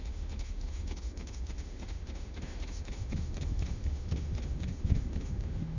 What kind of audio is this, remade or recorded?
remade